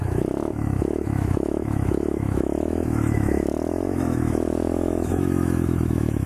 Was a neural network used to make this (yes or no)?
yes